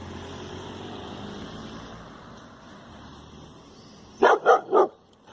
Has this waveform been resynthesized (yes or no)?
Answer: no